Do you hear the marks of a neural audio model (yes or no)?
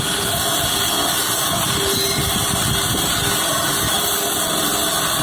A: no